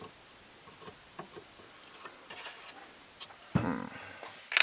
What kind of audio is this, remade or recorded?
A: recorded